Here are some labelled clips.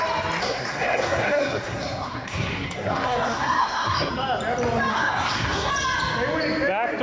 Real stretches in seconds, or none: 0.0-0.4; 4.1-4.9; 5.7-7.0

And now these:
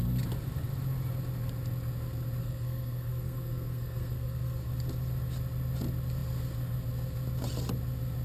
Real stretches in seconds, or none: 0.0-2.4; 4.7-8.2

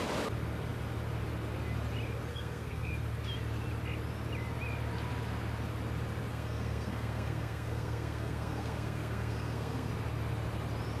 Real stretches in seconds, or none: 0.0-2.3; 2.9-6.3; 9.9-11.0

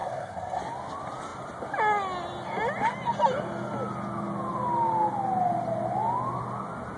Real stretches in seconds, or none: 0.6-7.0

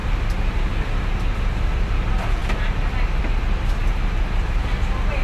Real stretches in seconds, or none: 0.0-5.2